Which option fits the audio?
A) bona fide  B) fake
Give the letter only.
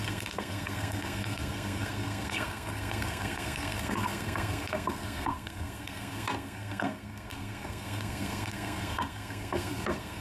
B